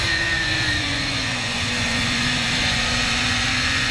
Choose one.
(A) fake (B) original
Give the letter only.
A